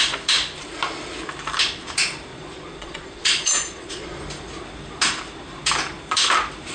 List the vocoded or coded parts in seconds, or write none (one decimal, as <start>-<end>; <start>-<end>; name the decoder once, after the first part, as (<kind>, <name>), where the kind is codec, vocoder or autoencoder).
2.3-4.2 (vocoder, Vocos)